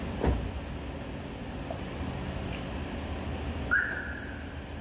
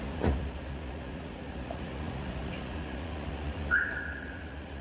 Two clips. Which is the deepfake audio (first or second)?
second